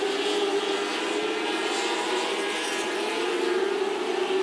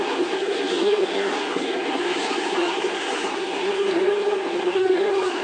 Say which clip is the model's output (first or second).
second